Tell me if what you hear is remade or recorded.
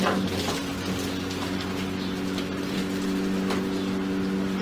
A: recorded